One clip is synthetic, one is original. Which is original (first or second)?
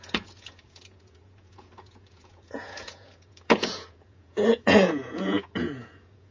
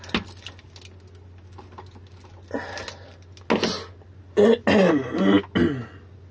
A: second